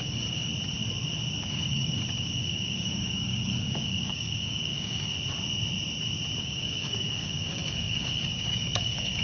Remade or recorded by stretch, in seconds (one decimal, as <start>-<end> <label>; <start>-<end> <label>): 0.0-0.5 remade; 0.5-1.4 recorded; 1.4-5.1 remade; 5.1-6.4 recorded; 6.4-9.2 remade